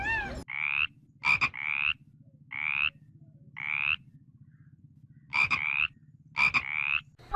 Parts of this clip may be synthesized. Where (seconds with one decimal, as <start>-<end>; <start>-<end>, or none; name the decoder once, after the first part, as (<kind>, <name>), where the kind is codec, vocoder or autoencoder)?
5.3-5.8 (autoencoder, DAC-VAE)